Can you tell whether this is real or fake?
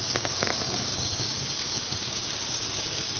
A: fake